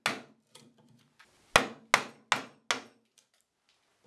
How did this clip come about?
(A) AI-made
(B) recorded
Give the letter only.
B